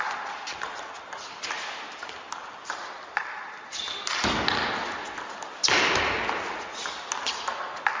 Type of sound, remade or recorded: recorded